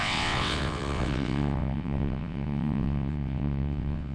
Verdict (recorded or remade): remade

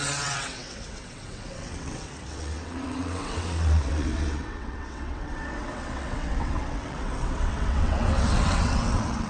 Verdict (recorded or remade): remade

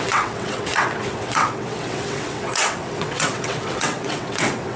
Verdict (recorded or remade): remade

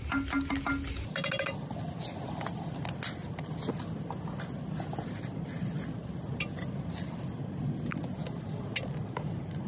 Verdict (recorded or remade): recorded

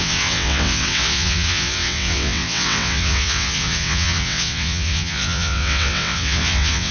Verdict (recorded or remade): remade